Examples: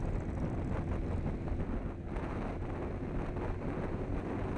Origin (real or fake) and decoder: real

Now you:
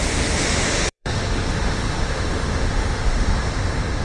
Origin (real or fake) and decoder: fake, autoencoder, DAC-VAE